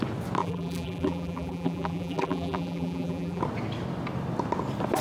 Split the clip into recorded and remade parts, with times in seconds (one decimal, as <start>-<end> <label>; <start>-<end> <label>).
0.0-0.4 recorded; 0.4-3.4 remade; 3.4-5.0 recorded